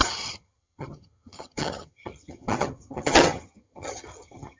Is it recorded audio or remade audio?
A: remade